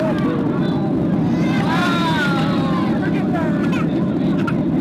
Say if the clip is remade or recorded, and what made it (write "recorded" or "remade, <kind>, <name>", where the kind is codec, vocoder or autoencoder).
remade, vocoder, BigVGAN v2